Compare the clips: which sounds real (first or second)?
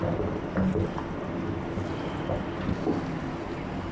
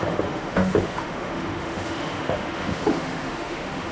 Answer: first